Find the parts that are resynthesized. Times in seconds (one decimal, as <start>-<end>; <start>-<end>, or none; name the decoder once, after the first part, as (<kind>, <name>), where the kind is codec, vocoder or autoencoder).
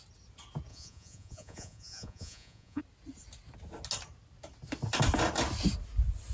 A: 0.7-2.8 (vocoder, Vocos)